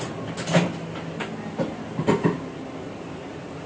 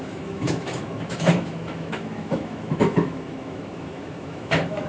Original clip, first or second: first